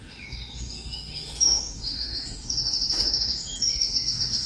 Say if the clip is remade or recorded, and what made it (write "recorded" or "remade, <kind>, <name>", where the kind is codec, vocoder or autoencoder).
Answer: remade, autoencoder, DAC-VAE